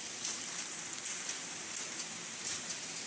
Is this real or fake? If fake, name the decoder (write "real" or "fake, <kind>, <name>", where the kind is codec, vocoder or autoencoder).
real